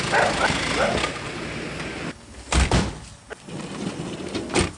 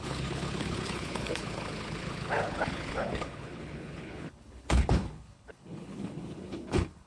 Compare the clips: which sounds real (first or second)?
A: first